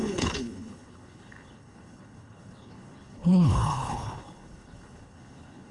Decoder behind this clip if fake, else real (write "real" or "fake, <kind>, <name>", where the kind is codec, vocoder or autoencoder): fake, codec, HILCodec